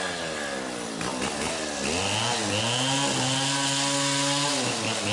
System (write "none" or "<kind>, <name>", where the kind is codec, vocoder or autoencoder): none